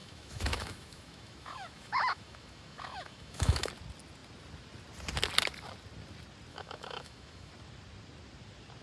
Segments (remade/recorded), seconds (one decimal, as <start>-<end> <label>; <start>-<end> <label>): 0.0-3.7 remade; 3.7-6.5 recorded; 6.5-7.5 remade; 7.5-8.8 recorded